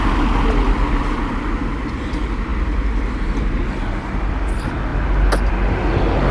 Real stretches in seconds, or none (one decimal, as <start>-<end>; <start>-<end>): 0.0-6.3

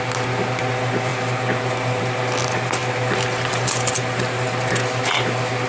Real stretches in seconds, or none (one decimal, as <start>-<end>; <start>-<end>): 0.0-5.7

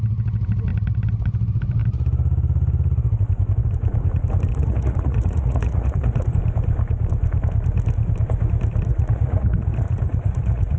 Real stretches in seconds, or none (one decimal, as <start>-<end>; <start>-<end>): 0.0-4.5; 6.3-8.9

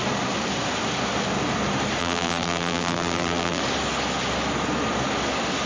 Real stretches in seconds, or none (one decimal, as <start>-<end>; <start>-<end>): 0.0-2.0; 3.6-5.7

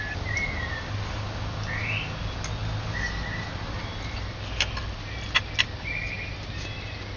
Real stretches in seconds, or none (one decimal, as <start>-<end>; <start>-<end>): 0.0-7.2

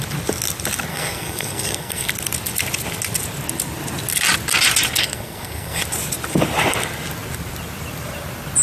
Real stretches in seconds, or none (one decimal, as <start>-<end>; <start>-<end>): 0.0-0.9; 2.1-5.0; 5.8-8.6

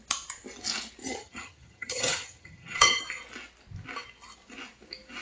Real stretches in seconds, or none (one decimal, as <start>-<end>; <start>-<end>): 0.0-1.0; 3.0-5.2